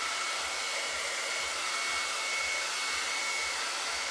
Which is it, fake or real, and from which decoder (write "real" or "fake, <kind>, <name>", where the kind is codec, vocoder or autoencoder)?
real